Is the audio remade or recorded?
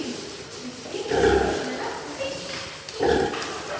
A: recorded